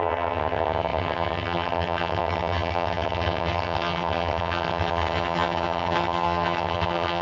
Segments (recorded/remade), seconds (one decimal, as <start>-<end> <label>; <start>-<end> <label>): 0.0-7.2 remade